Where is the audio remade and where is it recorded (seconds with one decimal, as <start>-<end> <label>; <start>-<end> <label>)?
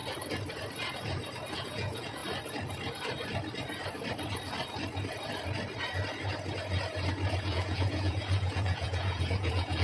0.0-1.5 recorded; 1.5-2.2 remade; 2.2-7.4 recorded; 7.4-9.8 remade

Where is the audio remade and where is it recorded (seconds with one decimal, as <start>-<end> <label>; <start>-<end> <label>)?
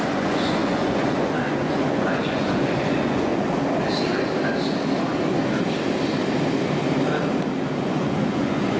0.0-3.3 remade; 3.3-7.8 recorded; 7.8-8.8 remade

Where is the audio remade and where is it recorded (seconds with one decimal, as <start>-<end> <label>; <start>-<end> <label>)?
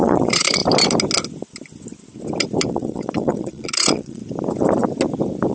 0.0-0.6 remade; 0.6-2.7 recorded; 2.7-4.2 remade; 4.2-5.5 recorded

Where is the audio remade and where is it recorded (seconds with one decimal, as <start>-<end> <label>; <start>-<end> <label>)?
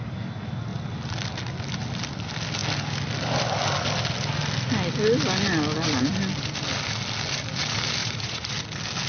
0.0-8.0 recorded; 8.0-8.5 remade; 8.5-9.1 recorded